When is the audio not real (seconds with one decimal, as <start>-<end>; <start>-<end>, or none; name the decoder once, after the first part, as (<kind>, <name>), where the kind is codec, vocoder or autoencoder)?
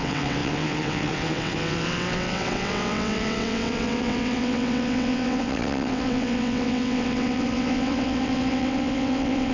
0.0-9.5 (vocoder, WaveNeXt)